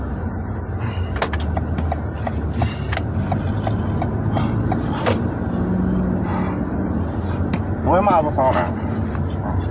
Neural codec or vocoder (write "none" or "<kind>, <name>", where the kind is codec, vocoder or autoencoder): none